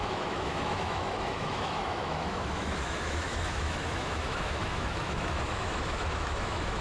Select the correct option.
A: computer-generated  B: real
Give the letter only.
A